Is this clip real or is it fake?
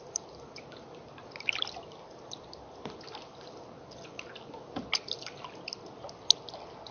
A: real